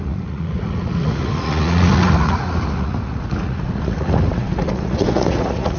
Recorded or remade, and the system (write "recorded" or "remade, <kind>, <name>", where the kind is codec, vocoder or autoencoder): remade, vocoder, Vocos